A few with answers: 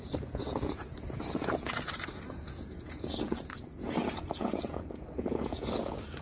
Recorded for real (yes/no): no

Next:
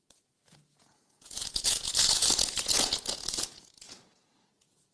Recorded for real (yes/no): no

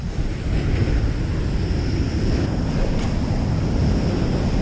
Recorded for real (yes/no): yes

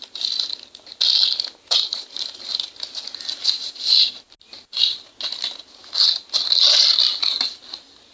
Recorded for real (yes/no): yes